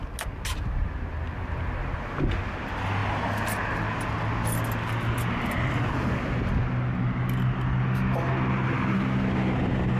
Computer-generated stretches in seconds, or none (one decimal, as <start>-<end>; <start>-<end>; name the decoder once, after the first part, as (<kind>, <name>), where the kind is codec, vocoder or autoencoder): none

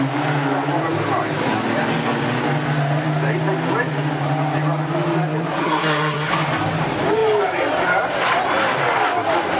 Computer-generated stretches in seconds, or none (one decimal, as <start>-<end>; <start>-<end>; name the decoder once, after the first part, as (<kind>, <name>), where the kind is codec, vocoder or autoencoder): 5.6-6.3 (codec, SNAC)

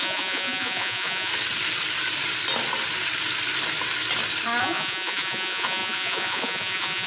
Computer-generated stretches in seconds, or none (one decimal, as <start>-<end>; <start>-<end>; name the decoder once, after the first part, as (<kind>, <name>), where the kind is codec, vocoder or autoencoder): 0.0-1.3 (vocoder, Vocos); 4.6-7.1

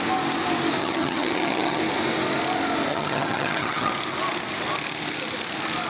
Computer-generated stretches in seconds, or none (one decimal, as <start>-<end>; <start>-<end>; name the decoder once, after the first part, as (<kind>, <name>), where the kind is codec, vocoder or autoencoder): 0.8-1.8 (vocoder, HiFi-GAN); 2.9-3.9